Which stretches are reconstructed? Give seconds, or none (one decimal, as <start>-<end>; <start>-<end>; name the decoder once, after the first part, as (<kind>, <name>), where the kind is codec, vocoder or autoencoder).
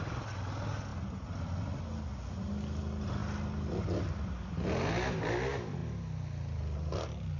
none